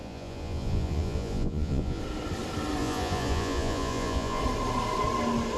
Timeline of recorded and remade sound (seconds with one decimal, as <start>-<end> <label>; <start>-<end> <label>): 0.0-2.0 remade; 2.0-2.8 recorded; 2.8-4.4 remade; 4.4-5.6 recorded